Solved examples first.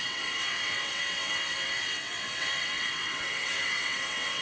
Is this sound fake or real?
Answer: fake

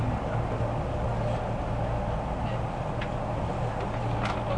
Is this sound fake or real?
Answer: real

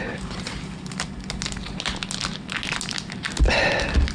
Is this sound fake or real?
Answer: real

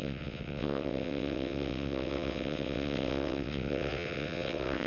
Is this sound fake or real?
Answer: fake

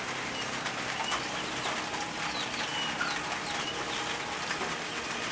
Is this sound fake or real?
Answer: real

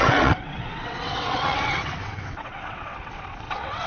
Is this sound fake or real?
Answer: fake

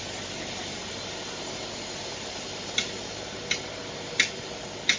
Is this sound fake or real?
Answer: real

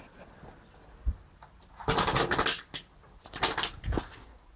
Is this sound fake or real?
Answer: real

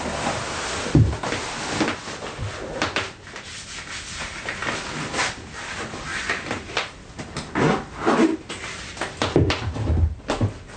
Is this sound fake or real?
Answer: real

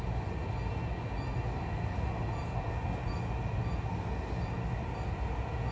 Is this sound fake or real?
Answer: real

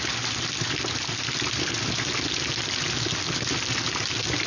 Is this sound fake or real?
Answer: real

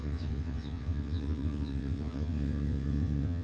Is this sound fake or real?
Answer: fake